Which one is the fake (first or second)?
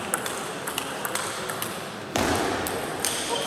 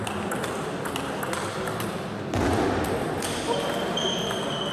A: first